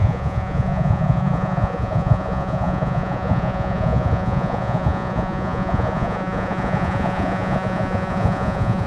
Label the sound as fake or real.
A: fake